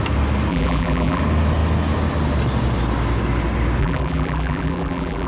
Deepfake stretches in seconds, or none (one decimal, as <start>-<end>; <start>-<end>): 0.5-1.2; 3.8-5.3